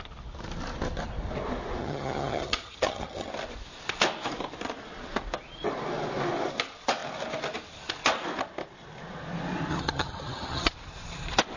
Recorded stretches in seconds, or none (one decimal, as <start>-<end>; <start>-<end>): 0.0-1.8; 3.3-9.7; 10.7-11.6